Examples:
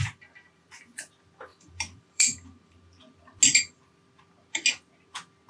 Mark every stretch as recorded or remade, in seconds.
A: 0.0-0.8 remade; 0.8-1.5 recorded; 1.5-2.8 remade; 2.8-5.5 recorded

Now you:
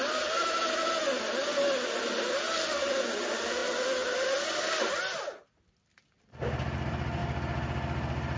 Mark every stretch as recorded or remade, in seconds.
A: 0.0-8.4 recorded

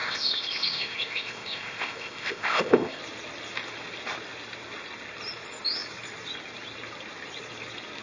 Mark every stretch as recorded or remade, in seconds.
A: 0.0-3.0 remade; 3.0-8.0 recorded

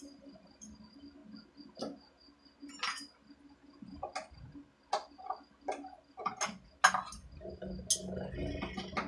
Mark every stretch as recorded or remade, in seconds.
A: 0.0-9.1 recorded

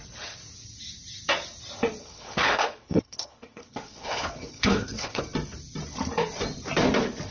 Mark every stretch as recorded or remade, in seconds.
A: 0.0-2.0 recorded; 2.0-5.2 remade; 5.2-7.3 recorded

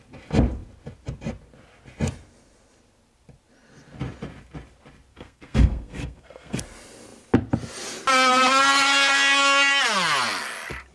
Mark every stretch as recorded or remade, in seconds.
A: 0.0-5.1 recorded; 5.1-6.6 remade; 6.6-10.9 recorded